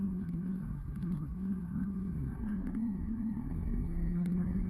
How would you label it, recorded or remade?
remade